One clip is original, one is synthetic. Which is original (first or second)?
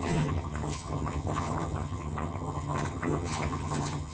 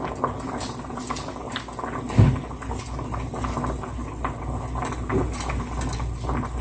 second